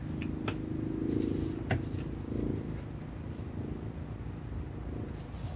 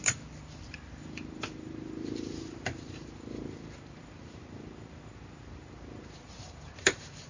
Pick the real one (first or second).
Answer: first